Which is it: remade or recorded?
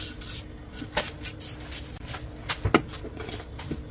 recorded